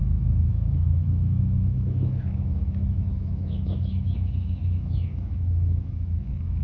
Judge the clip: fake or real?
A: fake